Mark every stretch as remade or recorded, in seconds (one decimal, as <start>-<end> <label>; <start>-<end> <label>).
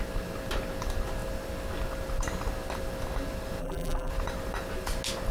0.0-3.6 recorded; 3.6-4.1 remade; 4.1-5.3 recorded